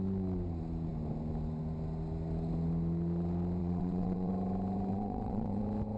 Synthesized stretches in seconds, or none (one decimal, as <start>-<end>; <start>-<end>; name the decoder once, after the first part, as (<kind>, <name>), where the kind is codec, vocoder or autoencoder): 3.6-4.3 (vocoder, WaveNeXt); 4.9-5.6